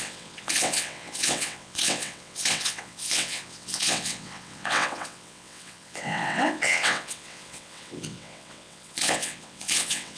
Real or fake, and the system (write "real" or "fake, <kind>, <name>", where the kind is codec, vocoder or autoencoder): fake, vocoder, WaveNeXt